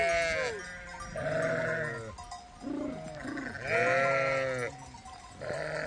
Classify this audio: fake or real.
real